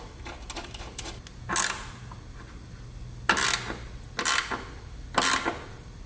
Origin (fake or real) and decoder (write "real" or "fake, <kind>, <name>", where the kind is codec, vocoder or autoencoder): real